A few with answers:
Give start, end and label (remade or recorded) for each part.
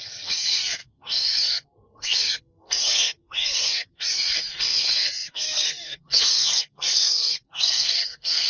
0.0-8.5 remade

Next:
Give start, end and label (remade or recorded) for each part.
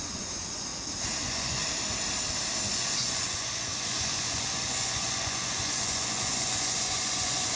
0.0-0.7 remade; 0.7-1.2 recorded; 1.2-1.6 remade; 1.6-2.7 recorded; 2.7-7.6 remade